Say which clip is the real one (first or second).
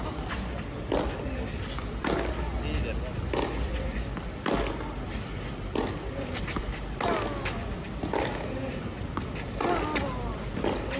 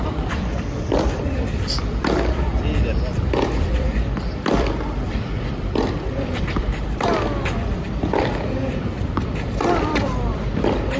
first